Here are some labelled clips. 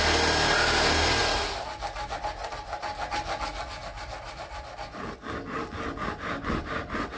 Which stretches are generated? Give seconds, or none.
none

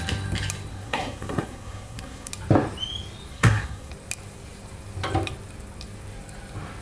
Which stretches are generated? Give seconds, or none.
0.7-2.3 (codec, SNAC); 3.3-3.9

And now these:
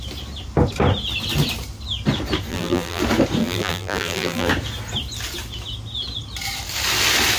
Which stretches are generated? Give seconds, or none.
2.5-3.0 (vocoder, BigVGAN v2); 3.4-4.5

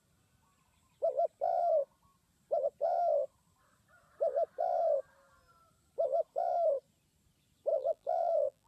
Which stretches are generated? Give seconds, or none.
7.7-8.7 (vocoder, BigVGAN v2)